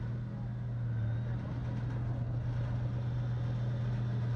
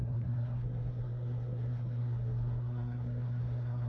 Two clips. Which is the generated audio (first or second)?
second